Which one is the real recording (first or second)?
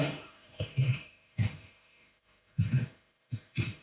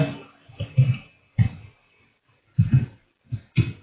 second